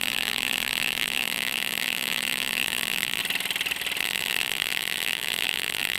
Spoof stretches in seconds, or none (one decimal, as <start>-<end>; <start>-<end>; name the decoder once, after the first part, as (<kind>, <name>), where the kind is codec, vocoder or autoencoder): 0.0-3.2 (vocoder, BigVGAN v2); 4.0-6.0

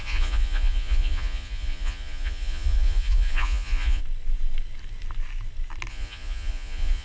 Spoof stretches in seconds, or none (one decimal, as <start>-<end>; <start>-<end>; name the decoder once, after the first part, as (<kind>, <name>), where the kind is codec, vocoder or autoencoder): 0.0-4.0 (vocoder, Vocos); 5.9-7.0

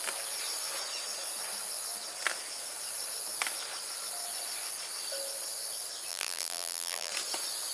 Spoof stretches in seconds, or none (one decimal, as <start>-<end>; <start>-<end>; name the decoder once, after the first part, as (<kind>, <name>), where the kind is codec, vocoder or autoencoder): 6.1-7.1 (vocoder, BigVGAN v2)